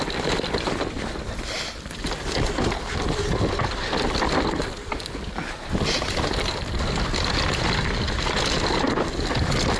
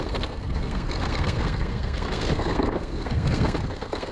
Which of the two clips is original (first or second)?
first